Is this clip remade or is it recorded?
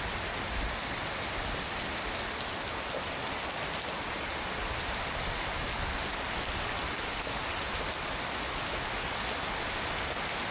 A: recorded